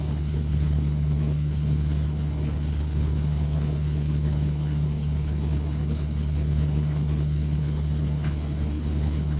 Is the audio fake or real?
fake